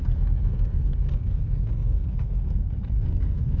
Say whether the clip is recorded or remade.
remade